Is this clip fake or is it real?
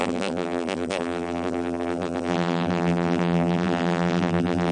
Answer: fake